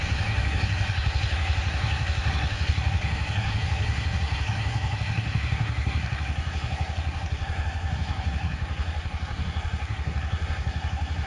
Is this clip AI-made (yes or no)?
yes